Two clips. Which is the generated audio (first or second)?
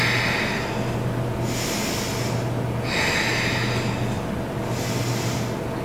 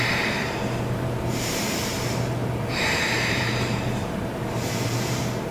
second